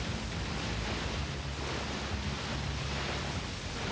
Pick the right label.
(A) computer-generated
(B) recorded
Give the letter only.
B